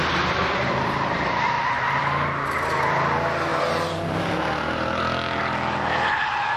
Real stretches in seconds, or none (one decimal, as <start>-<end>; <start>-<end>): 0.0-0.4; 2.0-6.6